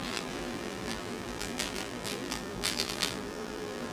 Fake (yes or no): yes